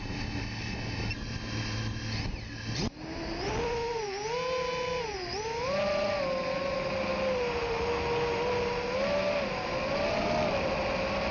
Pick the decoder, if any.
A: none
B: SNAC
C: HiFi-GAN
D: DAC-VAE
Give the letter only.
A